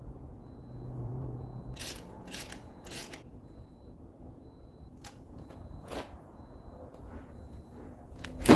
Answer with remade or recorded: remade